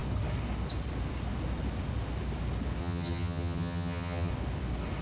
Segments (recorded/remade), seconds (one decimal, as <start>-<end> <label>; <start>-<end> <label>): 0.0-2.8 recorded; 2.8-4.3 remade; 4.3-5.0 recorded